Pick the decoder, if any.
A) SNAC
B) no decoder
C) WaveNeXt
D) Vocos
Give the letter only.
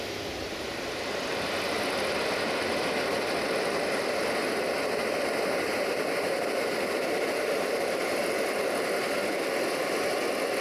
B